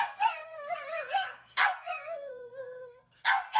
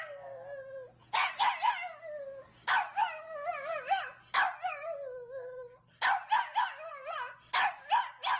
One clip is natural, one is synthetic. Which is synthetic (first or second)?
first